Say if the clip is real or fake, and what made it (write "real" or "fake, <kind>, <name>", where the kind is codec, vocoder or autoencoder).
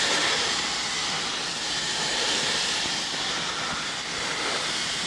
real